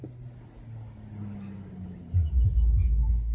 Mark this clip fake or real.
real